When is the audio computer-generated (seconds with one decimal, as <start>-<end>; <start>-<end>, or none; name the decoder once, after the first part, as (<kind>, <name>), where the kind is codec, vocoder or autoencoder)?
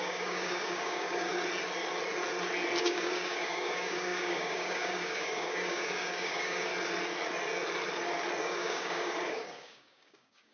0.0-1.3 (codec, DAC); 2.8-6.7; 8.4-10.5